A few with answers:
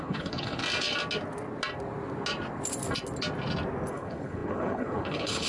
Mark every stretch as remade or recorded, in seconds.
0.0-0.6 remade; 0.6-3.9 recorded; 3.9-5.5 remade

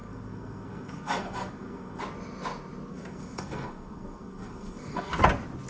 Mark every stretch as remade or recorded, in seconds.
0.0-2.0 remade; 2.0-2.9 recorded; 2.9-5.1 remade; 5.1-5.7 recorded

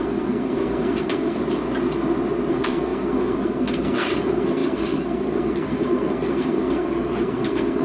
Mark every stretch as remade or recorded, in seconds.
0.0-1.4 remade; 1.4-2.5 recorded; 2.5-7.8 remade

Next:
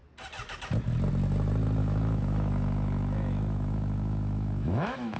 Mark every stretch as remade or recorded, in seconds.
0.0-1.8 recorded; 1.8-5.2 remade